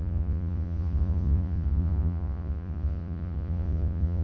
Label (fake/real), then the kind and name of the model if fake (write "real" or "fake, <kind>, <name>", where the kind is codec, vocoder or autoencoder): fake, vocoder, Vocos